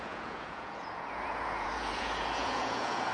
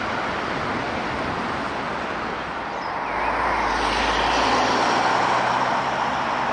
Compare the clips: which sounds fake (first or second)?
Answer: first